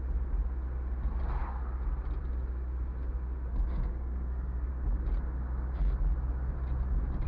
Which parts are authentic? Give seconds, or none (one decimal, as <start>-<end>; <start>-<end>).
0.0-3.5; 4.7-7.3